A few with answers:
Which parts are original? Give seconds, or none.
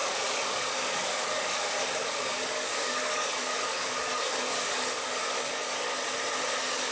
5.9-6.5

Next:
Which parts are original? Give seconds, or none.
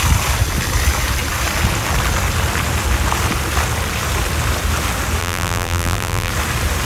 0.0-5.2; 6.3-6.8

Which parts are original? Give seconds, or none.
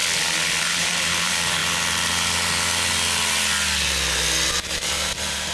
0.0-0.6; 1.6-4.8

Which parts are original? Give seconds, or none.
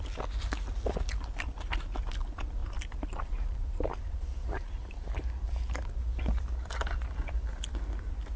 0.0-2.6; 5.3-8.4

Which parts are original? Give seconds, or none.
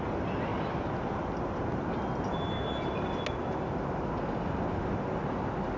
0.0-5.8